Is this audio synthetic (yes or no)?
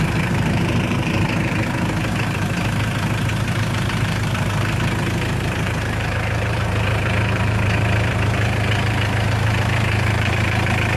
yes